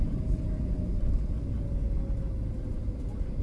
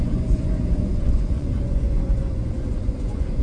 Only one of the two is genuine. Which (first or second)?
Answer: first